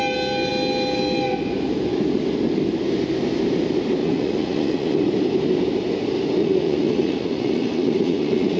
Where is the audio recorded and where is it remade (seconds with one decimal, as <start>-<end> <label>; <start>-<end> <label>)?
0.0-4.0 recorded; 4.0-5.0 remade; 5.0-6.4 recorded; 6.4-8.6 remade